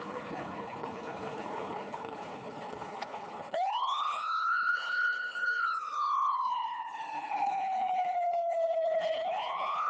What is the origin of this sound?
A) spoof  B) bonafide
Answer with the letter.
A